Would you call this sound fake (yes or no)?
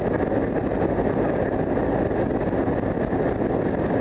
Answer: no